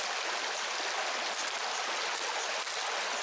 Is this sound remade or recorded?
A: recorded